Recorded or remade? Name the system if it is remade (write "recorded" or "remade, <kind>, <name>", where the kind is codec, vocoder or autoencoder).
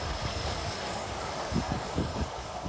remade, codec, DAC